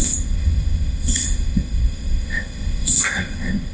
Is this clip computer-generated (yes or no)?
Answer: yes